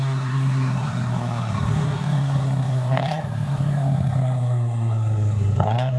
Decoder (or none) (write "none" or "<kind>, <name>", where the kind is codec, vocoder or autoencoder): codec, SNAC